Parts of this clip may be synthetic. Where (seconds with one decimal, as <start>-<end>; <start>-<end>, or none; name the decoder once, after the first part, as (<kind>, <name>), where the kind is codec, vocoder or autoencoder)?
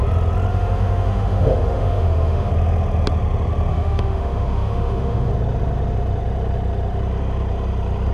0.5-2.5 (autoencoder, DAC-VAE); 3.7-5.3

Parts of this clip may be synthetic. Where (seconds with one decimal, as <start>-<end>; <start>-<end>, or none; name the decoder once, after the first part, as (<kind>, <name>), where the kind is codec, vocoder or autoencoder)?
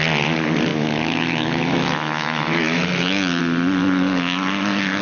0.7-3.4 (autoencoder, DAC-VAE); 3.8-5.0